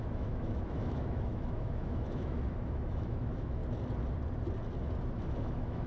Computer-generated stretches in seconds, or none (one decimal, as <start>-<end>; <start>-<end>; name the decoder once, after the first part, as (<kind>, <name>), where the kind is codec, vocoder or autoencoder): 0.0-3.6 (autoencoder, DAC-VAE); 5.2-5.9